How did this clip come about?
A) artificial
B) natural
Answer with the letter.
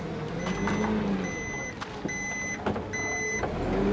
B